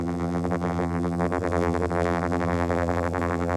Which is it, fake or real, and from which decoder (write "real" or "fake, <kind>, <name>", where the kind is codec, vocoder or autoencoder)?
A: fake, vocoder, BigVGAN v2